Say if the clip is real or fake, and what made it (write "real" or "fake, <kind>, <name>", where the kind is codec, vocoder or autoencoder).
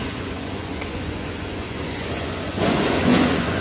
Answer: fake, vocoder, Vocos